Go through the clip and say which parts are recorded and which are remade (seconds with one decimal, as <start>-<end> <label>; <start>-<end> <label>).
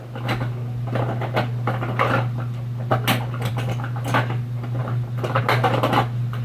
0.0-6.4 recorded